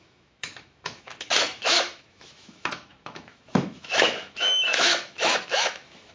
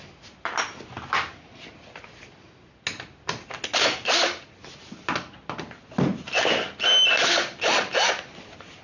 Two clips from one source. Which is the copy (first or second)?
first